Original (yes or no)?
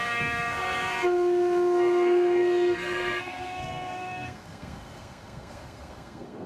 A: no